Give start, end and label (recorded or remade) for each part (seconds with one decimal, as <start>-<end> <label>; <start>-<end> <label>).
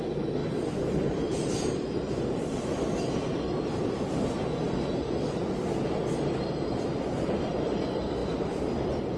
0.0-0.4 recorded; 0.4-2.8 remade; 2.8-8.2 recorded; 8.2-9.2 remade